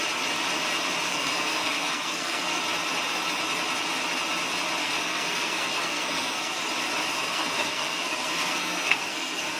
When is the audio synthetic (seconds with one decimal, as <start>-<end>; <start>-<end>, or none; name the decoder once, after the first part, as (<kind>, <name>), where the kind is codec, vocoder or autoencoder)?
1.1-2.6 (codec, SNAC); 4.8-6.6; 7.1-9.6